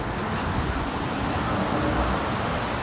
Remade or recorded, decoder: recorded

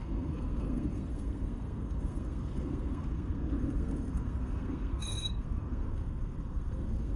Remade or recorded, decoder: remade, codec, SNAC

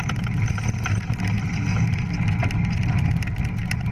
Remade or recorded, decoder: recorded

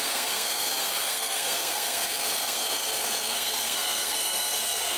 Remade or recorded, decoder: remade, codec, SNAC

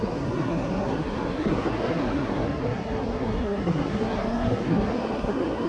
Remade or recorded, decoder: remade, codec, SNAC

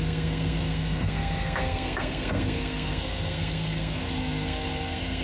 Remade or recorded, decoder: remade, codec, SNAC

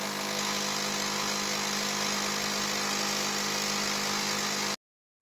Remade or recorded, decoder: recorded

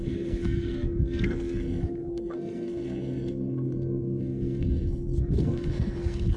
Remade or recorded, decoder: remade, codec, SNAC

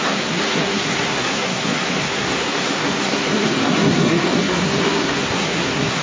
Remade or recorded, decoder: remade, codec, SNAC